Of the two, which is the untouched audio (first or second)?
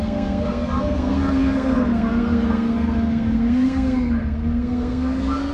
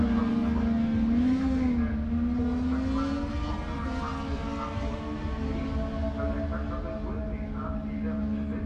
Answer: second